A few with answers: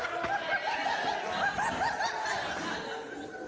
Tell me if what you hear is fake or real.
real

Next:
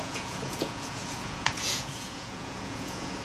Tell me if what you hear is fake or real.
fake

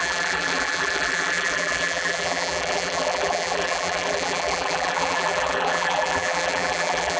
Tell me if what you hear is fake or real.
fake